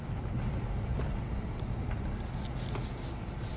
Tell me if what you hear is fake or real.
real